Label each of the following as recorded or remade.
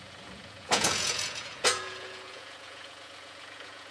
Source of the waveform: remade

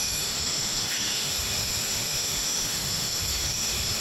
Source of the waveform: remade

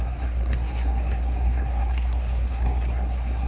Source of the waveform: remade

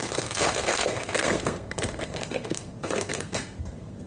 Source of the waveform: remade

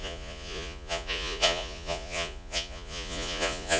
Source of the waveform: remade